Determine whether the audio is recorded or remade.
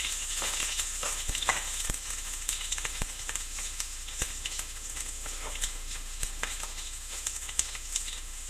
remade